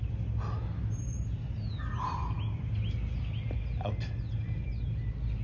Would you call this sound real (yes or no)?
yes